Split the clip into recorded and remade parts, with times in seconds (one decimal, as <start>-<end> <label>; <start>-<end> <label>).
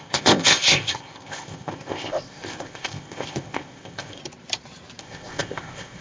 0.0-4.2 remade; 4.2-5.0 recorded; 5.0-6.0 remade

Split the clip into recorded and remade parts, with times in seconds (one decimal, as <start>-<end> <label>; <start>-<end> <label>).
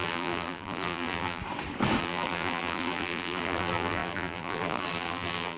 0.0-1.4 remade; 1.4-2.0 recorded; 2.0-5.6 remade